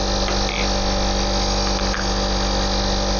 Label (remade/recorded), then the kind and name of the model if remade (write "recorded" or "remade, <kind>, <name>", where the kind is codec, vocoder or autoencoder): recorded